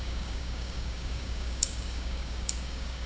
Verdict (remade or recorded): remade